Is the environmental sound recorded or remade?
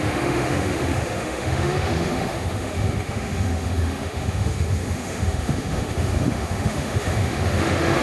remade